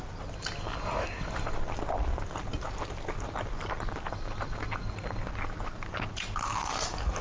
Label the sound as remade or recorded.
recorded